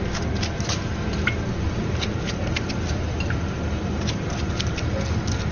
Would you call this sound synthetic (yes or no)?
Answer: no